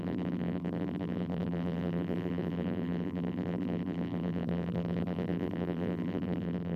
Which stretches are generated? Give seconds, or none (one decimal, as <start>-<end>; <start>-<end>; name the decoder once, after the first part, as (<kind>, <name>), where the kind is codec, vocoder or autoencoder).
0.0-6.8 (vocoder, BigVGAN v2)